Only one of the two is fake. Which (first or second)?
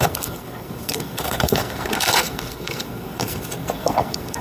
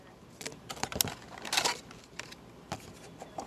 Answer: first